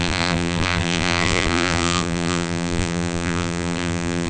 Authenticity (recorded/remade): remade